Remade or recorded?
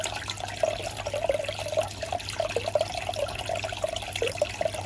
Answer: recorded